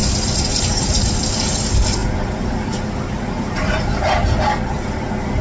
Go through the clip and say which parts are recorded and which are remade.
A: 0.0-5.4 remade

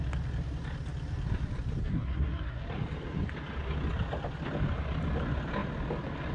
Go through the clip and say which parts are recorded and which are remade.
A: 0.0-1.8 recorded; 1.8-2.6 remade; 2.6-6.3 recorded

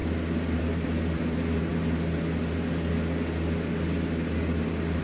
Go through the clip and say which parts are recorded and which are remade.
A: 0.0-0.6 recorded; 0.6-1.7 remade; 1.7-5.0 recorded

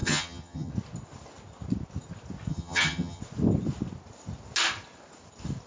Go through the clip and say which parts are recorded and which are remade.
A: 0.0-0.7 remade; 0.7-2.5 recorded; 2.5-3.2 remade; 3.2-5.7 recorded

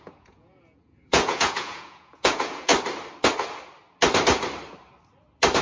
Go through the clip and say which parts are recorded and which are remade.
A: 0.0-2.7 remade; 2.7-5.6 recorded

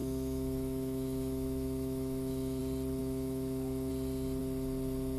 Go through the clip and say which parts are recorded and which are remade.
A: 0.0-2.6 remade; 2.6-3.0 recorded; 3.0-3.9 remade; 3.9-5.2 recorded

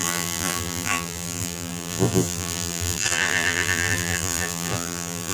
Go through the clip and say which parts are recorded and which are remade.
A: 0.0-5.3 remade

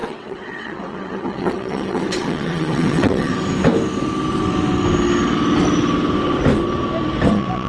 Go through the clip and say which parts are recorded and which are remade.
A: 0.0-3.3 remade; 3.3-7.3 recorded; 7.3-7.7 remade